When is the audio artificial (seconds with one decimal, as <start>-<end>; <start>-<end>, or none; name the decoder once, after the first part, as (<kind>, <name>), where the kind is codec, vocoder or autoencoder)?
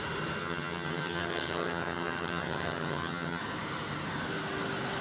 0.4-3.4 (vocoder, HiFi-GAN)